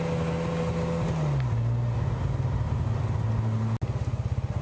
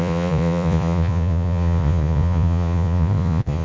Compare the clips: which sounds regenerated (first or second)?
second